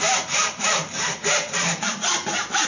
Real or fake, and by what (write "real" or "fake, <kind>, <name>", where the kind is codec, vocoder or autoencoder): fake, vocoder, BigVGAN v2